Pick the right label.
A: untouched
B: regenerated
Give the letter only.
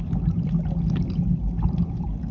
A